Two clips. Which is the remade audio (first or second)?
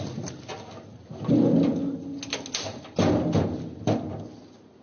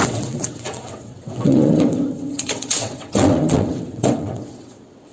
second